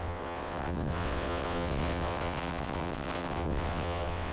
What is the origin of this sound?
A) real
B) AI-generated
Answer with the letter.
B